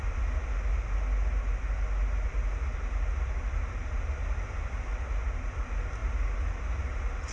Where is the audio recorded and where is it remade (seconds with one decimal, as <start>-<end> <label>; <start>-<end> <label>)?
0.0-7.3 recorded